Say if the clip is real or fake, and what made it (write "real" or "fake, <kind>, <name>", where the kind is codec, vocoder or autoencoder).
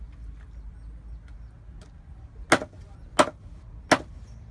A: real